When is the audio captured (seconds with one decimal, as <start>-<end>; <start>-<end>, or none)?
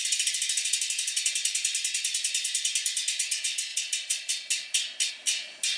0.0-5.8